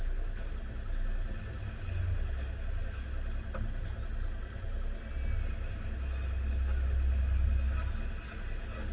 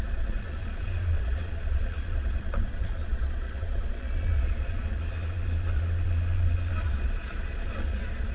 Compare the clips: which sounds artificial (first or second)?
second